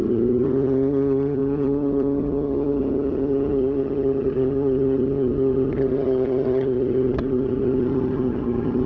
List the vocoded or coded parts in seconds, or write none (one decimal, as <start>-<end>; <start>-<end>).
0.0-8.9